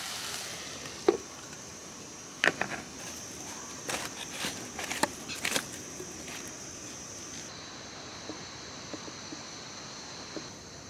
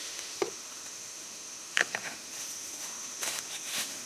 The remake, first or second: second